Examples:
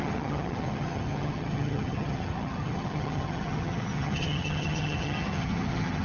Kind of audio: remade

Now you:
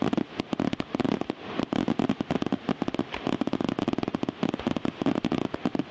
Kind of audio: recorded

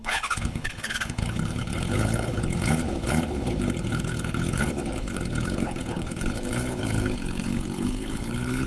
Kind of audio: remade